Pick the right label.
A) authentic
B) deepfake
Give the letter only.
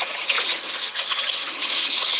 B